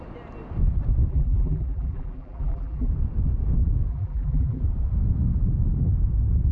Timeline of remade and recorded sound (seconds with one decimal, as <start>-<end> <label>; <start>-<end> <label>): 0.0-1.1 recorded; 1.1-2.9 remade; 2.9-3.9 recorded; 3.9-4.6 remade; 4.6-6.5 recorded